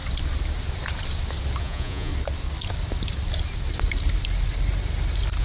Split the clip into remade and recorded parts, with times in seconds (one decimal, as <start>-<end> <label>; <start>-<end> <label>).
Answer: 0.0-1.6 recorded; 1.6-2.1 remade; 2.1-5.4 recorded